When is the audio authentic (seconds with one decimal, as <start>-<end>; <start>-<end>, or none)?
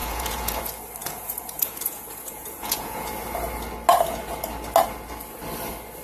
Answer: 0.6-1.0; 3.1-6.0